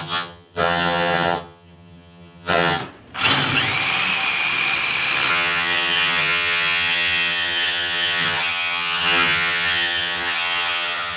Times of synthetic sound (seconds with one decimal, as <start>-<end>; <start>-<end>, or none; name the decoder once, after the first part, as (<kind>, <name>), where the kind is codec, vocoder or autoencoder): 0.0-2.8 (vocoder, HiFi-GAN); 5.3-11.2